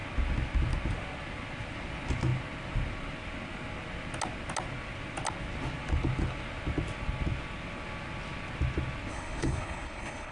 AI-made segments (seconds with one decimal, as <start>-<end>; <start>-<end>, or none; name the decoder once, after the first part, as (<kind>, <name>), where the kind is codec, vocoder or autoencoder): 9.1-10.3 (codec, HILCodec)